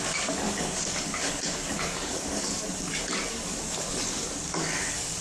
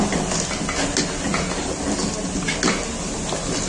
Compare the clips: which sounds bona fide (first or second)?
second